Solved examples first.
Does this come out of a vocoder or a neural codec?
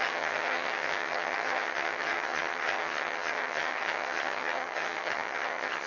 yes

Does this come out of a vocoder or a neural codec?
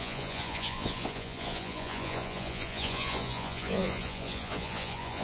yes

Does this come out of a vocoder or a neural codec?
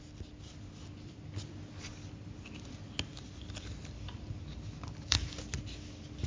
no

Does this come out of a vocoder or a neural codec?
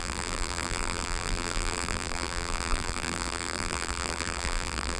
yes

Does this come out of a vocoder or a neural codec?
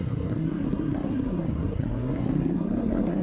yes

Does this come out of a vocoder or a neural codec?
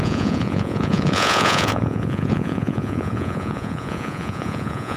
yes